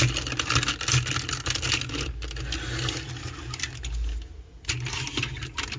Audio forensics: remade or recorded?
recorded